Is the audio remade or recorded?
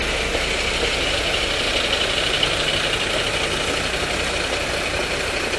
recorded